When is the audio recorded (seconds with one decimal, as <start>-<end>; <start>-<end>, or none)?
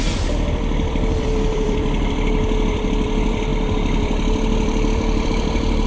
none